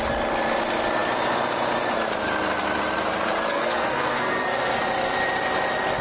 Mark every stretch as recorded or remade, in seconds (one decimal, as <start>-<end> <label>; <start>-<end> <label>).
0.0-3.5 recorded; 3.5-4.8 remade; 4.8-6.0 recorded